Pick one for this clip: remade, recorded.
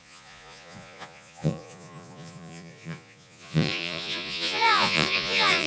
remade